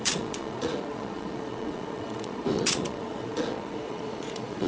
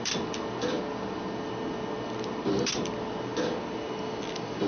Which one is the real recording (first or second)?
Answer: second